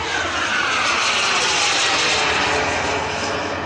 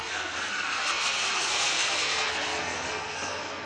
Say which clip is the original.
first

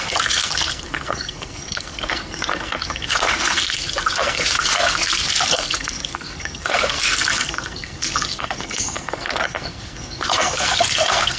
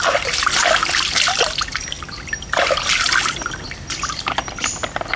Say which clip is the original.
second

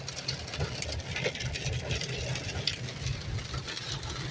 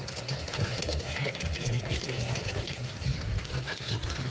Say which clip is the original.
first